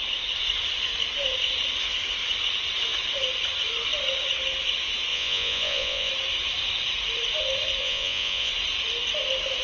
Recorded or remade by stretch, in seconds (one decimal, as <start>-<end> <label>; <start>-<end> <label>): 0.0-5.1 recorded; 5.1-6.1 remade; 6.1-7.8 recorded; 7.8-8.5 remade; 8.5-9.6 recorded